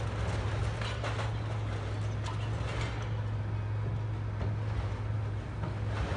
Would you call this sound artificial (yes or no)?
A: no